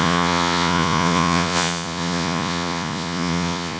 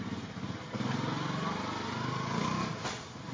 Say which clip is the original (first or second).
second